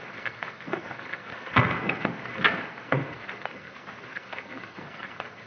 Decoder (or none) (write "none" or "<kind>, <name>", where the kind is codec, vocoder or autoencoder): codec, SNAC